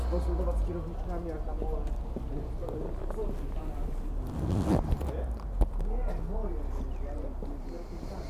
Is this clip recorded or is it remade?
recorded